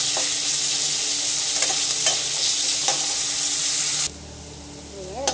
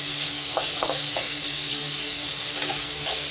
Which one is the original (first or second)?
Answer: first